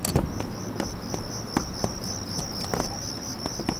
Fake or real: real